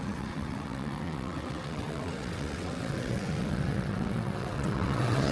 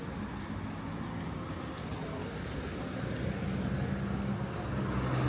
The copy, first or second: first